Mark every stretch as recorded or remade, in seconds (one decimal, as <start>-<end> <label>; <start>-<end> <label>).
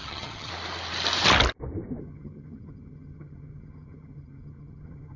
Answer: 0.0-0.5 remade; 0.5-2.0 recorded; 2.0-5.2 remade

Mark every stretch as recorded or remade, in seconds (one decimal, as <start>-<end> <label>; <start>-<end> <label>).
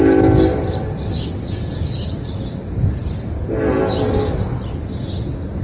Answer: 0.0-5.6 recorded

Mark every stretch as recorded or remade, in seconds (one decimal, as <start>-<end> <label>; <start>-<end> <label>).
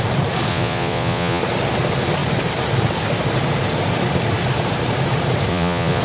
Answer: 0.0-0.5 recorded; 0.5-1.4 remade; 1.4-5.5 recorded; 5.5-6.0 remade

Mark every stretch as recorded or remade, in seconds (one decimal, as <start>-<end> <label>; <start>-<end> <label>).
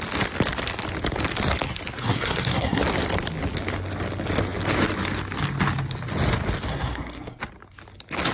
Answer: 0.0-2.0 recorded; 2.0-2.8 remade; 2.8-6.7 recorded; 6.7-7.4 remade; 7.4-8.3 recorded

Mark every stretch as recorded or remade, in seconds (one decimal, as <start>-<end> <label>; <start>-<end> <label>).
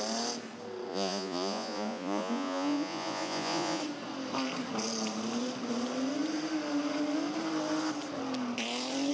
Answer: 0.0-0.9 recorded; 0.9-3.8 remade; 3.8-9.1 recorded